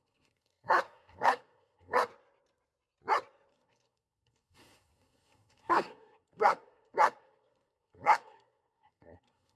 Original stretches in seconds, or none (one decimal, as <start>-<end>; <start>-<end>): 2.1-3.5